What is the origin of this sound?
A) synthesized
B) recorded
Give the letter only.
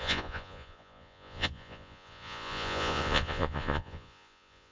A